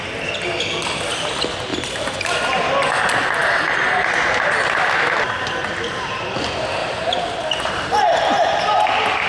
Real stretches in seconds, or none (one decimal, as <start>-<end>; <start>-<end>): 0.0-1.7; 2.4-6.8; 8.6-9.3

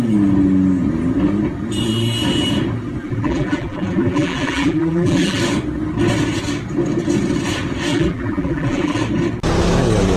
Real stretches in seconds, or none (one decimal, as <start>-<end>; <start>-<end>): 0.0-3.0; 5.4-7.9; 9.0-10.2

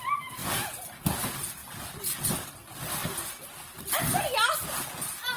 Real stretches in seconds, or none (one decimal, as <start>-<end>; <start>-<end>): 0.0-0.4; 1.1-5.4

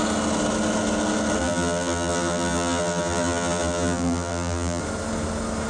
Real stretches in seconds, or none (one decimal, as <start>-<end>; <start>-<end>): 0.0-1.4; 4.8-5.7